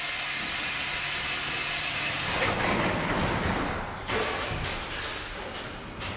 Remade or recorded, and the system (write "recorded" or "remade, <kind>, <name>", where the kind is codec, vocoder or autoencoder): recorded